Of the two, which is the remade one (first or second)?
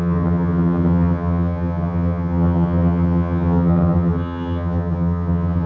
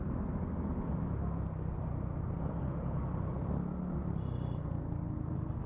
first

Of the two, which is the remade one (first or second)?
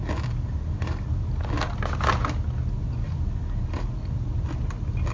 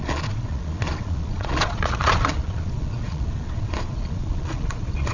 second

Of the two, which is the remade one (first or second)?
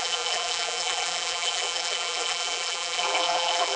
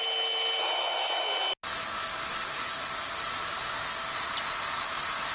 first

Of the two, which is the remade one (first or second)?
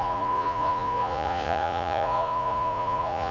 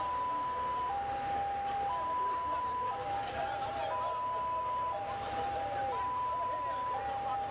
first